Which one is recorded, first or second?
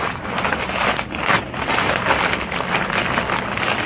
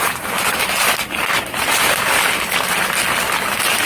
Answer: first